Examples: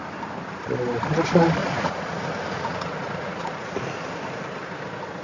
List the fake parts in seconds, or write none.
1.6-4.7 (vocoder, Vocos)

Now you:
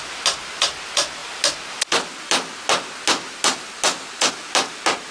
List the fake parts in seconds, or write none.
none

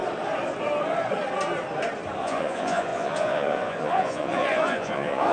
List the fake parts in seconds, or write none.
2.2-5.3 (vocoder, Vocos)

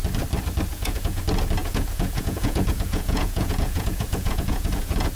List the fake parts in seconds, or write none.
0.7-1.2 (vocoder, Vocos); 1.6-5.1

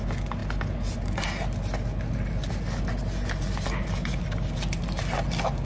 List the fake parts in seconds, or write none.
none

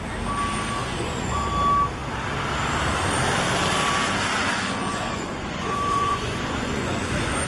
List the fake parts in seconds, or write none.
0.8-1.5 (vocoder, Vocos); 4.4-7.5

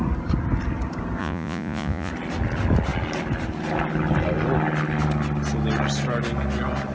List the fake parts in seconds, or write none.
1.2-2.1 (vocoder, Vocos)